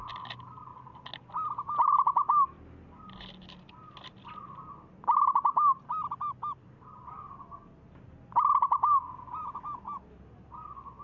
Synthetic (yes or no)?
no